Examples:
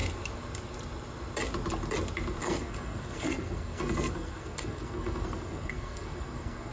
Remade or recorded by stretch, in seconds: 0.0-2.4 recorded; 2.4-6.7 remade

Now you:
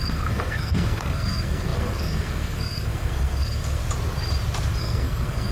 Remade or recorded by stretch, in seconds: 0.0-3.8 remade; 3.8-4.8 recorded; 4.8-5.5 remade

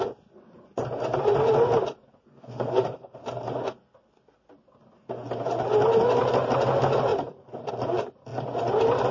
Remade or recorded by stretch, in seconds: 0.0-2.3 recorded; 2.3-3.2 remade; 3.2-9.1 recorded

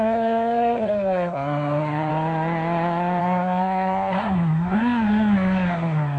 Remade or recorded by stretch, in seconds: 0.0-2.1 remade; 2.1-3.2 recorded; 3.2-6.2 remade

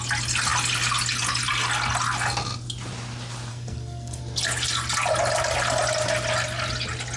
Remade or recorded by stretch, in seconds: 0.0-3.5 recorded; 3.5-4.2 remade; 4.2-7.2 recorded

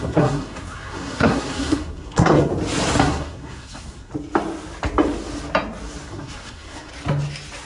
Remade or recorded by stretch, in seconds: 0.0-2.5 remade; 2.5-3.0 recorded; 3.0-4.1 remade; 4.1-6.1 recorded; 6.1-6.9 remade; 6.9-7.7 recorded

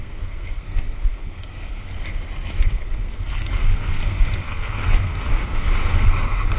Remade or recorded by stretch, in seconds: 0.0-1.9 remade; 1.9-2.7 recorded; 2.7-5.3 remade; 5.3-6.6 recorded

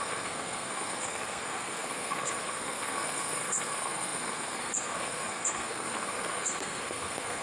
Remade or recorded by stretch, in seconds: 0.0-7.4 remade